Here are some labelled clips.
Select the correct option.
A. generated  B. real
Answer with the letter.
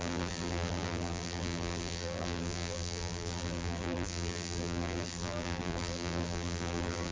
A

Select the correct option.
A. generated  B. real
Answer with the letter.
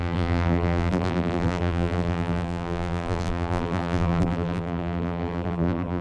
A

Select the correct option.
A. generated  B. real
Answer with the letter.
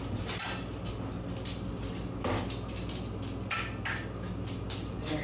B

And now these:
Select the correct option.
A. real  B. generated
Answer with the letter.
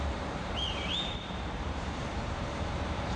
B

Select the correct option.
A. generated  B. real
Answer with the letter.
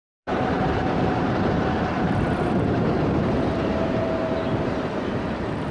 A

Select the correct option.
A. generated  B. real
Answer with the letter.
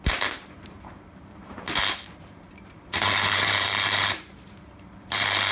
A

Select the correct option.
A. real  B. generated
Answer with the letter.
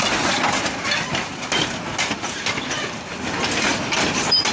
A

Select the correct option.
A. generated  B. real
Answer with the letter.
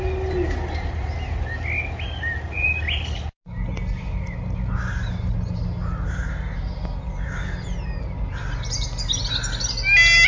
B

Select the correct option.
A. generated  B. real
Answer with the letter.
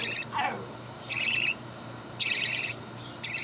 A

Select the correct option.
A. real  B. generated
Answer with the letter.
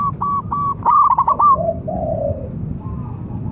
B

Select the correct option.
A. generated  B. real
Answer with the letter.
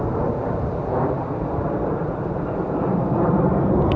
A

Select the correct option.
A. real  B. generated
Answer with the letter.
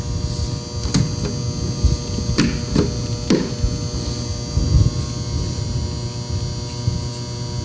A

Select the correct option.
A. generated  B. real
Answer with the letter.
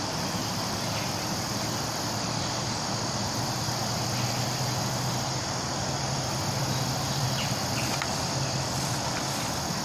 A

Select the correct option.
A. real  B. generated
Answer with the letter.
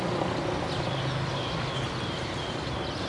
B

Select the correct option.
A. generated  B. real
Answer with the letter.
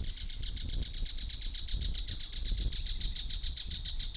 B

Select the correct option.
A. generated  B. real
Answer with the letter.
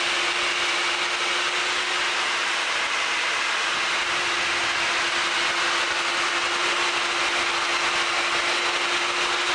B